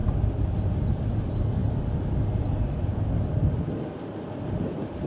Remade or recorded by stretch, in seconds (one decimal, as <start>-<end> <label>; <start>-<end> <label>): 0.0-1.0 recorded; 1.0-5.1 remade